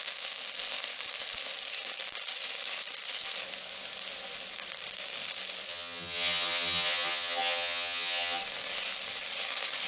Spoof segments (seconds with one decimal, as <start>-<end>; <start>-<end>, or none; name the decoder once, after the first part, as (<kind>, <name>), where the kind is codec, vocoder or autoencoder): 5.7-8.4 (vocoder, HiFi-GAN)